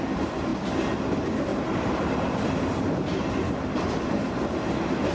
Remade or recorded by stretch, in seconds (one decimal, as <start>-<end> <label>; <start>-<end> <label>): 0.0-1.5 recorded; 1.5-4.6 remade; 4.6-5.1 recorded